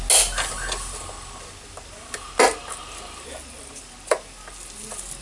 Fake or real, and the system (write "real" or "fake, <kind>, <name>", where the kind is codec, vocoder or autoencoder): real